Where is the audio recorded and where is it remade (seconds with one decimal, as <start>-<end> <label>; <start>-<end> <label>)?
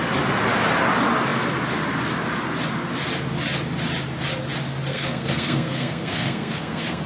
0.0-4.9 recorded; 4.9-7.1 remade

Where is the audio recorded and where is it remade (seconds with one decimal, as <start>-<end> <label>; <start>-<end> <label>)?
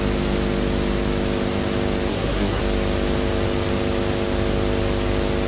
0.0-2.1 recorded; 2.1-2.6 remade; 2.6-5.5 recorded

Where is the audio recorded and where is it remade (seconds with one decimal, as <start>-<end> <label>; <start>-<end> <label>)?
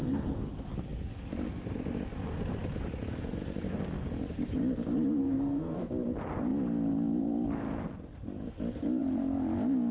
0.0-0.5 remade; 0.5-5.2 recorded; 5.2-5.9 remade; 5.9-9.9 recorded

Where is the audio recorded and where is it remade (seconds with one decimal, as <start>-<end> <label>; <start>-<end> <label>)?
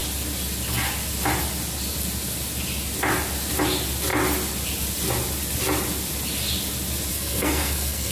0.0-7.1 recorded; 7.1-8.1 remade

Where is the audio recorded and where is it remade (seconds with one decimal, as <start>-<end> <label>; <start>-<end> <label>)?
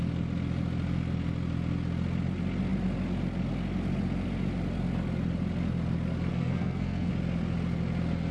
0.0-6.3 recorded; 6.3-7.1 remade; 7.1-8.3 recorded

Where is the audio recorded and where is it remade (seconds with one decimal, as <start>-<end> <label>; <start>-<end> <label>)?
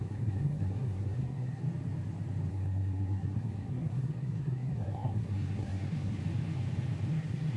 0.0-1.6 remade; 1.6-2.5 recorded; 2.5-6.2 remade; 6.2-7.1 recorded; 7.1-7.6 remade